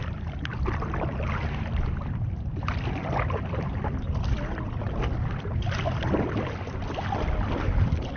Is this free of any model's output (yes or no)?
yes